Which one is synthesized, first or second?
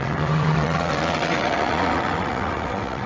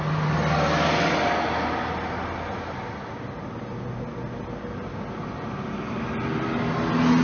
first